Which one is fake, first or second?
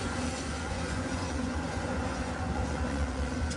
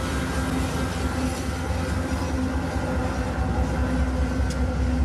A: first